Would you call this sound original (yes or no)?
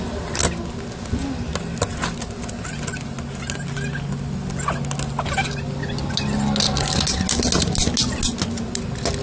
yes